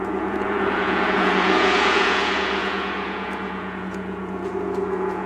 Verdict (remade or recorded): remade